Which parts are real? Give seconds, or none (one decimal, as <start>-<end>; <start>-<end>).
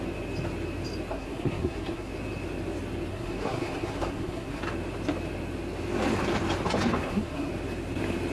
0.0-1.1; 2.1-3.1; 4.6-7.0; 7.5-8.3